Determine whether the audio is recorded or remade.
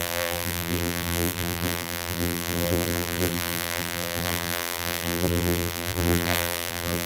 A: remade